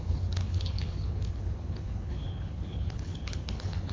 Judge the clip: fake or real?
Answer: fake